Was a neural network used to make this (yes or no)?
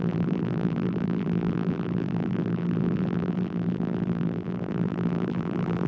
yes